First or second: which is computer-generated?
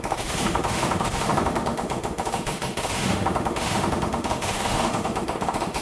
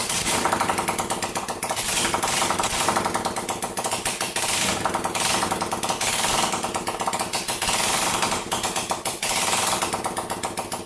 first